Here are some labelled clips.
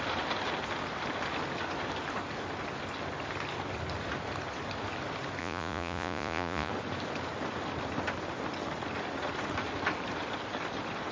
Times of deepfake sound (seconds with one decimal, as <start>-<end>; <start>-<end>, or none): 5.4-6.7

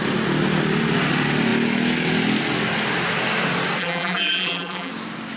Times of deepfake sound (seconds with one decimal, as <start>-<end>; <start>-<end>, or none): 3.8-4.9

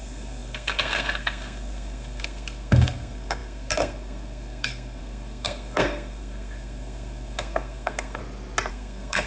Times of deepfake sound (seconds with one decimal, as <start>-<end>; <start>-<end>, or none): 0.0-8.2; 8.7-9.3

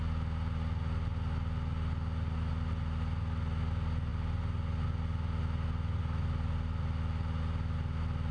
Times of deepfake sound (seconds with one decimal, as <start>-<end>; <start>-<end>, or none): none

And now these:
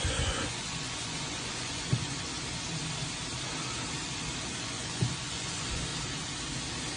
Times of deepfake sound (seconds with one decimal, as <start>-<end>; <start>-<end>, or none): 0.0-2.3; 4.6-5.9

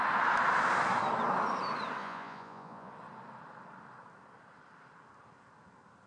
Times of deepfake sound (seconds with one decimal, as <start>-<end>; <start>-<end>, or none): 2.0-2.9

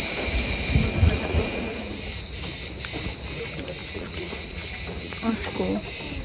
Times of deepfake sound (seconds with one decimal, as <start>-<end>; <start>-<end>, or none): 1.0-2.0; 3.8-5.5